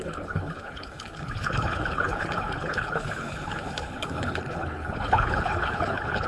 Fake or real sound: fake